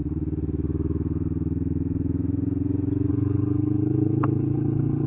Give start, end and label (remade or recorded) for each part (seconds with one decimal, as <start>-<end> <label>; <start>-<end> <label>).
0.0-3.1 recorded; 3.1-5.1 remade